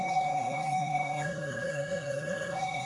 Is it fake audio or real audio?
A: fake